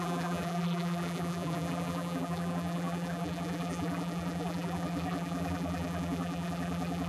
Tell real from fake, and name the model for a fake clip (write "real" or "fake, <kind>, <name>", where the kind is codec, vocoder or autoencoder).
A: fake, vocoder, BigVGAN v2